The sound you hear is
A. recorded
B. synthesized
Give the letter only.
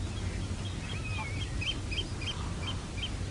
A